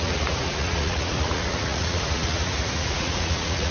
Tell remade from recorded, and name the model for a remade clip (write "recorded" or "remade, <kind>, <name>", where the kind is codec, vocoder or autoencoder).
remade, vocoder, Vocos